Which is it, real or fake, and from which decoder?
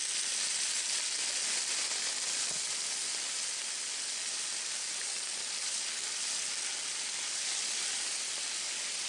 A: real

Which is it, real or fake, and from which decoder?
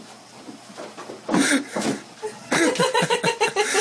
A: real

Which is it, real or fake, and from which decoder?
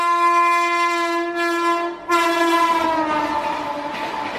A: real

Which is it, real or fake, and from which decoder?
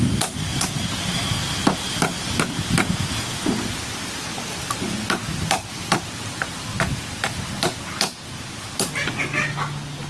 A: real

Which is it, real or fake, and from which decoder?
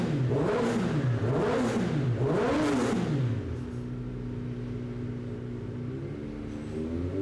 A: real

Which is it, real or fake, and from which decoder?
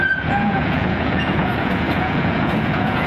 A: fake, vocoder, Vocos